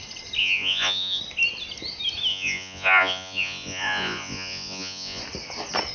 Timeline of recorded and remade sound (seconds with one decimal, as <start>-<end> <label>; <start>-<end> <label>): 0.0-0.4 recorded; 0.4-1.2 remade; 1.2-2.3 recorded; 2.3-5.2 remade; 5.2-5.9 recorded